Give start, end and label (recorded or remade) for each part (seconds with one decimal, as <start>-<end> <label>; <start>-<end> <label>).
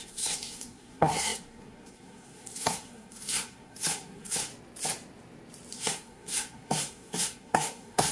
0.0-4.5 remade; 4.5-5.7 recorded; 5.7-8.1 remade